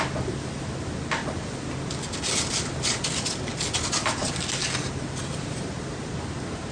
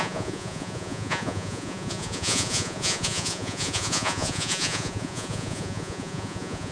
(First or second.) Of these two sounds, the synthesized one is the second